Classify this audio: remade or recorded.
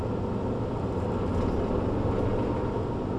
recorded